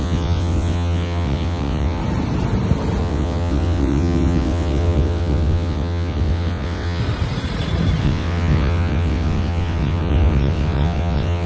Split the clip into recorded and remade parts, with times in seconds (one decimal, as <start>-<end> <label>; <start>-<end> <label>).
0.0-2.0 remade; 2.0-3.0 recorded; 3.0-7.0 remade; 7.0-8.0 recorded; 8.0-11.5 remade